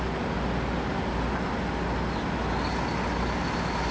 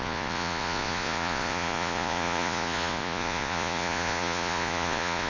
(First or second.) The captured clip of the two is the first